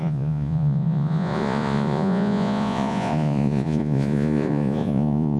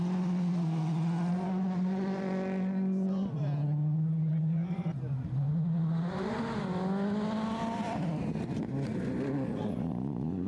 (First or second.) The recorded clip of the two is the second